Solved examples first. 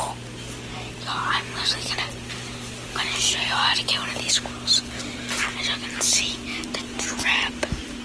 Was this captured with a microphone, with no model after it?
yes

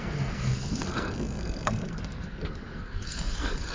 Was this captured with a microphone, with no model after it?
no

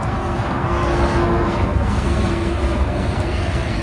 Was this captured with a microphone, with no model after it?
no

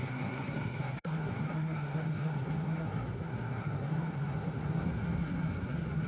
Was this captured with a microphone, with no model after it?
no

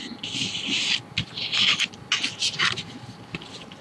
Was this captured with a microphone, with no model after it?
yes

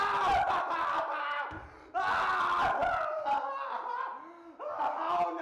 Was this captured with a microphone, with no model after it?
yes